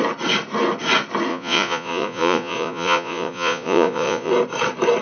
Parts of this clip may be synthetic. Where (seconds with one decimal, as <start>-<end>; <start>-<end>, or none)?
1.3-4.3